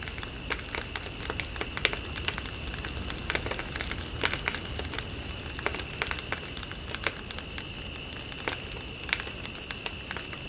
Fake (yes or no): no